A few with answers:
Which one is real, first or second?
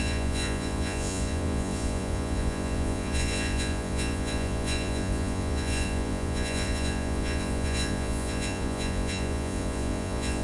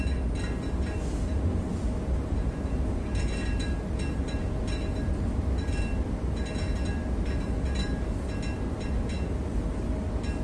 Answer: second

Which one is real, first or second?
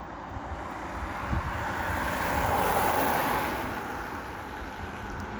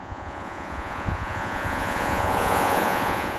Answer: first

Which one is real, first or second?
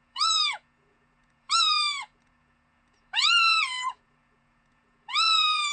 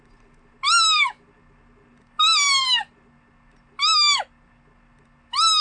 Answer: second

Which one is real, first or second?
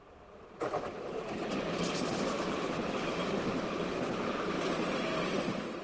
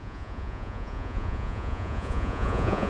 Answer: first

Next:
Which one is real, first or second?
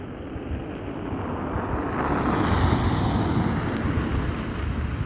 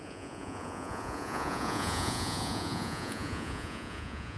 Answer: first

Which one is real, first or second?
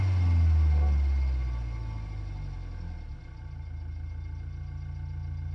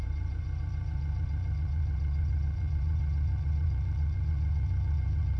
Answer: first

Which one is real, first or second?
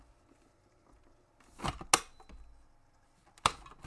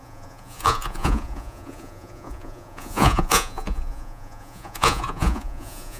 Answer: first